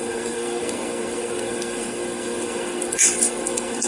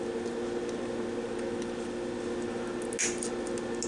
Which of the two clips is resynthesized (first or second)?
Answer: first